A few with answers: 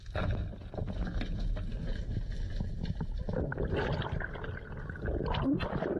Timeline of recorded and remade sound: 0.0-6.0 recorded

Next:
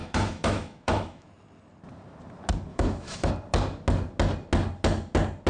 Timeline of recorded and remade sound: 0.0-1.3 remade; 1.3-2.7 recorded; 2.7-3.3 remade; 3.3-5.5 recorded

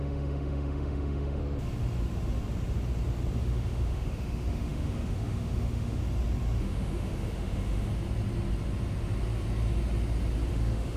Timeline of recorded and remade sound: 0.0-1.4 remade; 1.4-3.4 recorded; 3.4-6.0 remade; 6.0-6.6 recorded; 6.6-7.9 remade; 7.9-10.5 recorded; 10.5-11.0 remade

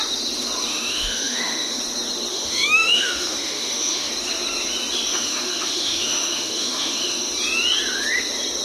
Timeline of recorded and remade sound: 0.0-0.7 recorded; 0.7-1.8 remade; 1.8-2.3 recorded; 2.3-4.1 remade; 4.1-5.1 recorded; 5.1-7.3 remade; 7.3-8.6 recorded

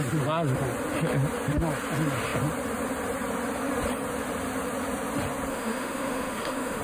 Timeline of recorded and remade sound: 0.0-5.5 recorded; 5.5-6.8 remade

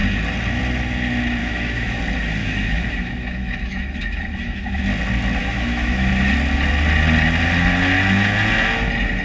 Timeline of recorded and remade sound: 0.0-1.4 recorded; 1.4-2.0 remade; 2.0-2.4 recorded; 2.4-4.8 remade; 4.8-5.4 recorded; 5.4-6.1 remade; 6.1-9.2 recorded